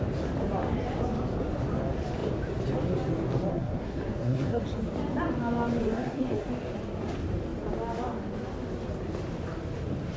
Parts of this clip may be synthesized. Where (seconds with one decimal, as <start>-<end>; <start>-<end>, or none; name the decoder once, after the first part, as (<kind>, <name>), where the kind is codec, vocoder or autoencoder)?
3.5-4.6 (codec, SNAC); 5.8-6.5